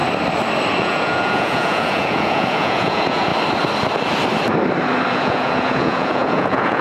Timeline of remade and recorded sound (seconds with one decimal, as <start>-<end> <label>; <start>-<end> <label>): 0.0-0.8 recorded; 0.8-3.3 remade; 3.3-5.1 recorded; 5.1-6.8 remade